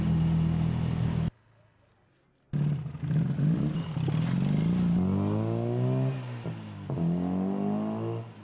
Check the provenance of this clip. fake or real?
real